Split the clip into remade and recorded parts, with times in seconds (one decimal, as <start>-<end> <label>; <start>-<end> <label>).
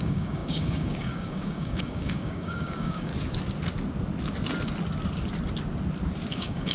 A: 0.0-3.1 remade; 3.1-6.3 recorded; 6.3-6.7 remade